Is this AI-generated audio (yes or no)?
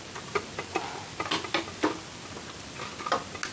no